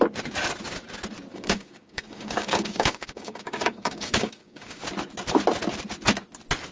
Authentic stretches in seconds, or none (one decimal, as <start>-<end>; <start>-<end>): 0.0-1.3; 4.8-6.7